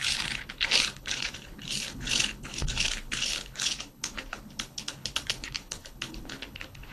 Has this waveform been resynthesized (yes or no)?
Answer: yes